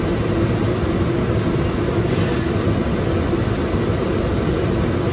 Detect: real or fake real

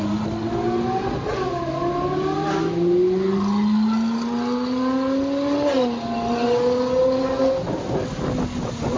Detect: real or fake real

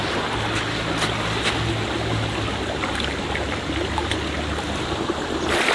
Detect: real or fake real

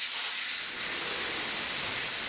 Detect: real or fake real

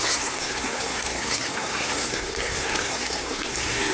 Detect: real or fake fake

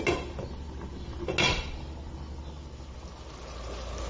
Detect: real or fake real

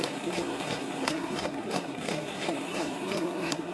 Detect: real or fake fake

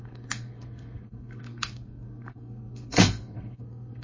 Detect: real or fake fake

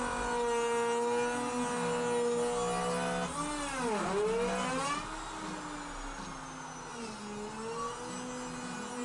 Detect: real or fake real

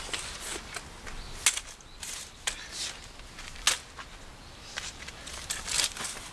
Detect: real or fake real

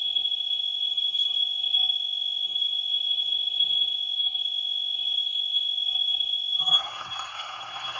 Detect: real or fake fake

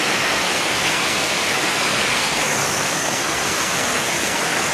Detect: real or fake fake